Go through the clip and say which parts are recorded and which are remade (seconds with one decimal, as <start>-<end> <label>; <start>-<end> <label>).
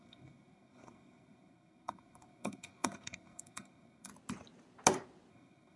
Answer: 0.0-4.1 remade; 4.1-5.3 recorded; 5.3-5.8 remade